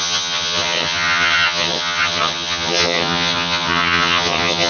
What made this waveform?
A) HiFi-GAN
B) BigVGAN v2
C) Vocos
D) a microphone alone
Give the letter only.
A